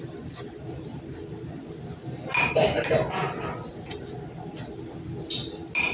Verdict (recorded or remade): recorded